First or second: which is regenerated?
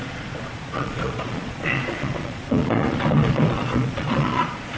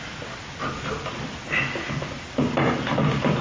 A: first